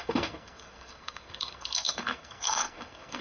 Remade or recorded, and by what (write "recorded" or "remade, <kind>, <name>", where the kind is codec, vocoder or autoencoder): remade, codec, SNAC